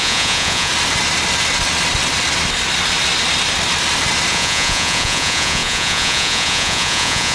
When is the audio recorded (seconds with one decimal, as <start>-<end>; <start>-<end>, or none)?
0.7-4.3